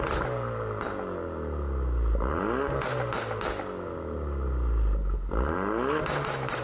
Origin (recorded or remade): recorded